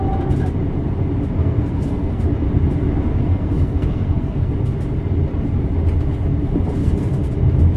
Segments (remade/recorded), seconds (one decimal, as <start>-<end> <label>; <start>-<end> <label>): 0.0-1.4 recorded; 1.4-2.2 remade; 2.2-3.2 recorded; 3.2-4.5 remade; 4.5-6.8 recorded; 6.8-7.3 remade; 7.3-7.8 recorded